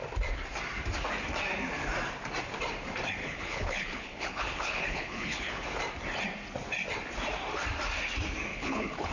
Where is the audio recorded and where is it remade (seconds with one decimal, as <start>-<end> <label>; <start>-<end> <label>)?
0.0-3.2 recorded; 3.2-5.8 remade; 5.8-8.5 recorded; 8.5-9.1 remade